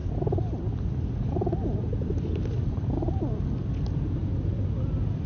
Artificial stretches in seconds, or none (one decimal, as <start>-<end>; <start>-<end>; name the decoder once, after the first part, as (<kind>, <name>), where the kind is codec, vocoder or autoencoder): none